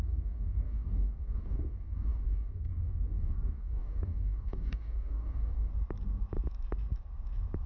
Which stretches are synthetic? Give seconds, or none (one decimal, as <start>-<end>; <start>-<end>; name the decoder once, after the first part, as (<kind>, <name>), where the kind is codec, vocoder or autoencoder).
0.0-5.7 (codec, DAC)